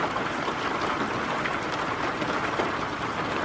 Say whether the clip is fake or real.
real